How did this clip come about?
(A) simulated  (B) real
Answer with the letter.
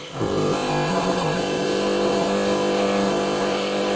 A